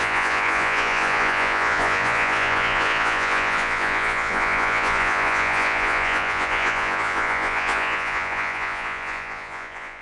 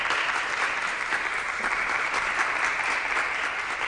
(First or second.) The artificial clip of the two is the first